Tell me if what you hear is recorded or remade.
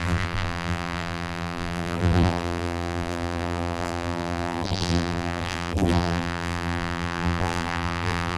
remade